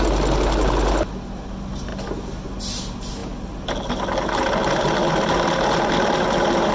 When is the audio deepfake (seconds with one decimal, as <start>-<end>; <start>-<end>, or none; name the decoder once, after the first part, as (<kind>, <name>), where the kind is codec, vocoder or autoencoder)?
none